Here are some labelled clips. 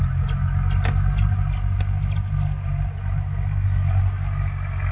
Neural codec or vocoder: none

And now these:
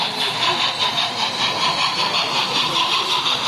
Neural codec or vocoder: vocoder, BigVGAN v2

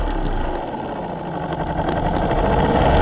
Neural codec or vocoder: none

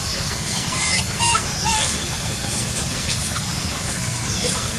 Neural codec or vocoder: codec, SNAC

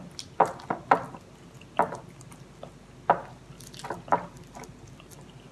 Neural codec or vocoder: none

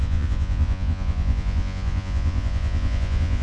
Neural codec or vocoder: vocoder, Vocos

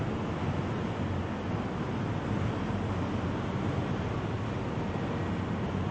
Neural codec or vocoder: none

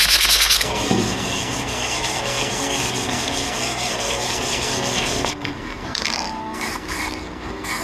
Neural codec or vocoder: codec, SNAC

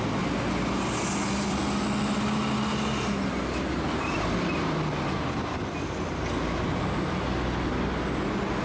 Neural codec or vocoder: none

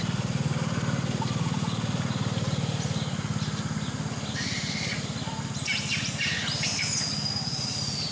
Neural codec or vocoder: none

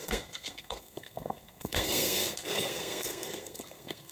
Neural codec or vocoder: codec, SNAC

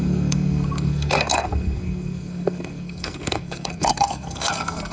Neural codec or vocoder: codec, SNAC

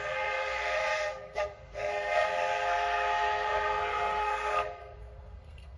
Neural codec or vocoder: codec, SNAC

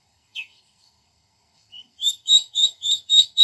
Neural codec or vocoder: codec, SNAC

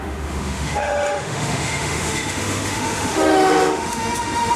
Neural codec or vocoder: autoencoder, DAC-VAE